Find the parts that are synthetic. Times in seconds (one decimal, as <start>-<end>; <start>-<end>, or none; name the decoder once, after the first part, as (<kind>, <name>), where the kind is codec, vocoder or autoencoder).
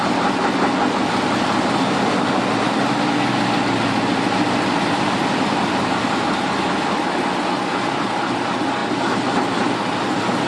none